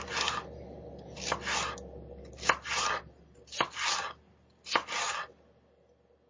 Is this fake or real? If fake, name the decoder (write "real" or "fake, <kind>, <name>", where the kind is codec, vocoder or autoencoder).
real